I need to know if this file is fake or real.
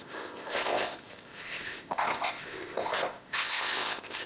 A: fake